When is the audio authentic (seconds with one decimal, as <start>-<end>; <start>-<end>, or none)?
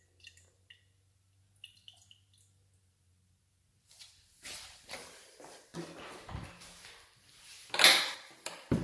0.0-8.8